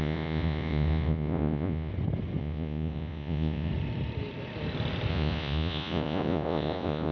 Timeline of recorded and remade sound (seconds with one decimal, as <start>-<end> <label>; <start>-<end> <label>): 0.0-1.9 remade; 1.9-2.4 recorded; 2.4-3.7 remade; 3.7-5.1 recorded; 5.1-7.1 remade